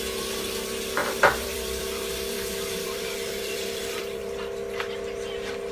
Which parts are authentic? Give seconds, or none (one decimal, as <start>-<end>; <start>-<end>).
0.0-1.0; 4.2-5.7